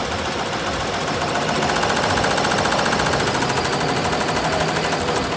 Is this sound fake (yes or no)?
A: no